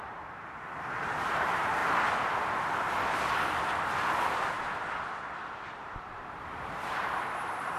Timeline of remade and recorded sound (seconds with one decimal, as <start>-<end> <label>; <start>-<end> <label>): 0.0-1.8 remade; 1.8-5.8 recorded; 5.8-7.8 remade